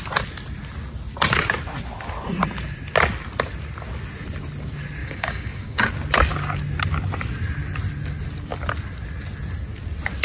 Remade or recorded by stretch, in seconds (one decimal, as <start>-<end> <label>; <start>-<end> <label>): 0.0-5.0 recorded; 5.0-5.9 remade; 5.9-10.2 recorded